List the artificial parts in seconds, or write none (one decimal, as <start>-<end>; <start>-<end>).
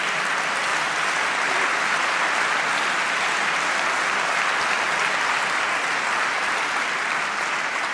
0.0-0.7; 5.4-7.9